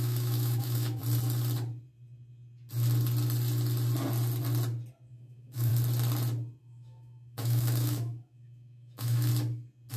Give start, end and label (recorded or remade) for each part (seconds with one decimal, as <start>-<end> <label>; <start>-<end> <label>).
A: 0.0-1.0 remade; 1.0-5.1 recorded; 5.1-5.7 remade; 5.7-6.6 recorded; 6.6-9.3 remade; 9.3-10.0 recorded